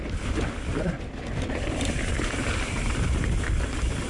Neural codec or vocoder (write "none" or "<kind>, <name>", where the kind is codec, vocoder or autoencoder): none